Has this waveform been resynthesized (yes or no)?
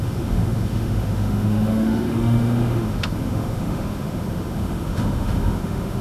yes